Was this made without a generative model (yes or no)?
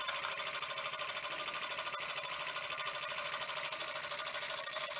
yes